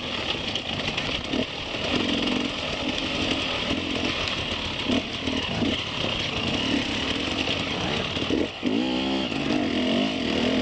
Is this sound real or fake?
real